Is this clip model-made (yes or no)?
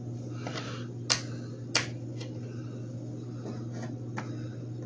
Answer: no